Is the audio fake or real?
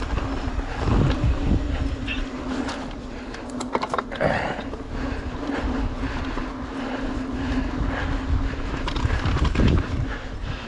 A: real